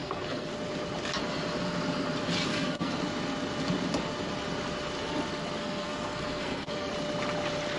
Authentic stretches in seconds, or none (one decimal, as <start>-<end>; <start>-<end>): 0.5-2.5; 3.0-5.6; 6.9-7.8